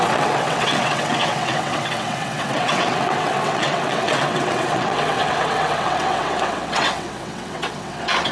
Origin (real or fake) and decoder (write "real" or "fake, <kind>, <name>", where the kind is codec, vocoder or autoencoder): fake, vocoder, WaveNeXt